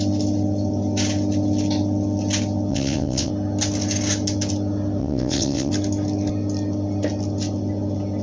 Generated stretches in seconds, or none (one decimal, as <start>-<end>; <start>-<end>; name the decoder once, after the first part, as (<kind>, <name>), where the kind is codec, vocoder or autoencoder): 2.7-3.3 (vocoder, WaveNeXt); 5.0-5.7